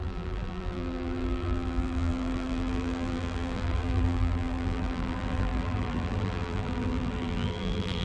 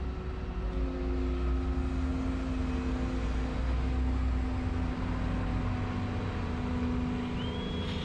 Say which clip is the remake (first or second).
first